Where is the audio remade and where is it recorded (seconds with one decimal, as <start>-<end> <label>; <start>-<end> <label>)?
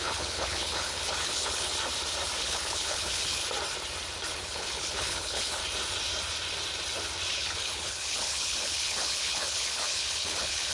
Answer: 0.0-1.7 remade; 1.7-2.4 recorded; 2.4-3.4 remade; 3.4-4.3 recorded; 4.3-5.6 remade; 5.6-7.3 recorded; 7.3-10.7 remade